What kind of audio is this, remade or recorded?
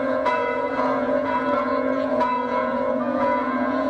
remade